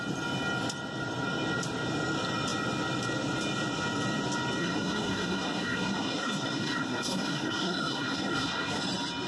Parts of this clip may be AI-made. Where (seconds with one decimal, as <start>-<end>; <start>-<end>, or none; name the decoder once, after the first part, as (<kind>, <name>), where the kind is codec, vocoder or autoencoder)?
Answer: 4.6-8.8 (codec, SNAC)